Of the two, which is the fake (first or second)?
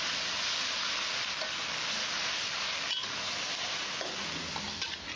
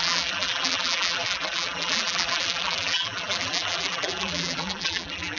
second